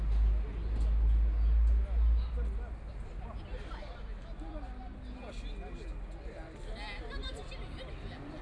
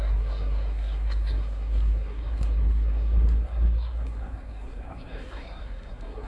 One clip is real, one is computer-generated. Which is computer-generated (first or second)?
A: second